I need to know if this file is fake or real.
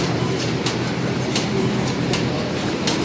fake